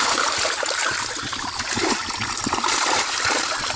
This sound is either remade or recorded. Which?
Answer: recorded